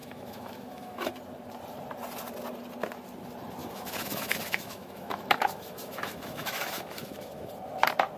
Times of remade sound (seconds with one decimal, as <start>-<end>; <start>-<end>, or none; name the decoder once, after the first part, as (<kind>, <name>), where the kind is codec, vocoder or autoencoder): 0.0-1.1 (autoencoder, DAC-VAE); 3.6-7.5